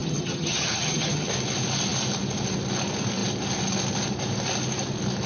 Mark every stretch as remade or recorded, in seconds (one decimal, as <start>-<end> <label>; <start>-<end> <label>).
0.0-1.3 remade; 1.3-5.3 recorded